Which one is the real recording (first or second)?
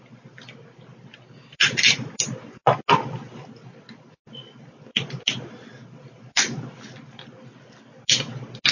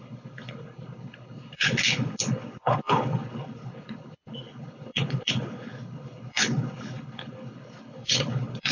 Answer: first